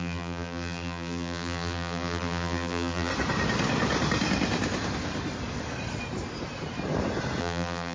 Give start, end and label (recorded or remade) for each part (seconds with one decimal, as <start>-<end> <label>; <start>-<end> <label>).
0.0-3.1 remade; 3.1-7.4 recorded; 7.4-7.9 remade